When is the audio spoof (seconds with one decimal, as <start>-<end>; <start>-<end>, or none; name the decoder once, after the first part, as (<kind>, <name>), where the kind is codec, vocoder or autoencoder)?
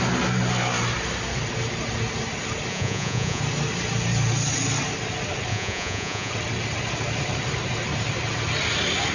2.7-3.4 (vocoder, Vocos); 5.5-6.3